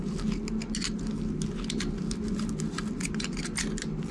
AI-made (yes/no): no